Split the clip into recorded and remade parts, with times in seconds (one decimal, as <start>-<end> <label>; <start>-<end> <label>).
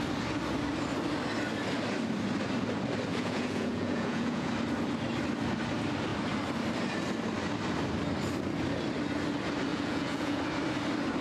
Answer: 0.0-3.1 recorded; 3.1-4.5 remade; 4.5-9.7 recorded; 9.7-10.4 remade; 10.4-11.2 recorded